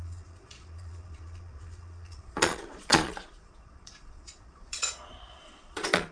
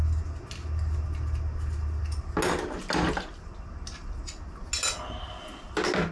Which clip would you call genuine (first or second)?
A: second